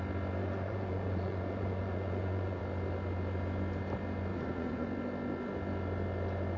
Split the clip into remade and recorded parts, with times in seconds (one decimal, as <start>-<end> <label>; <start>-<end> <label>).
0.0-0.4 recorded; 0.4-2.6 remade; 2.6-4.3 recorded; 4.3-4.9 remade; 4.9-6.6 recorded